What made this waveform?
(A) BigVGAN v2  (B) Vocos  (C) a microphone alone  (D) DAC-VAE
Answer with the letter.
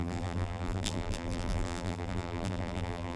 A